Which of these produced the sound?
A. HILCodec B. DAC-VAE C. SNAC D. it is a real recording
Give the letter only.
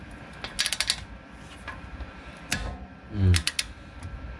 D